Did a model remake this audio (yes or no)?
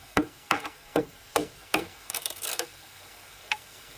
yes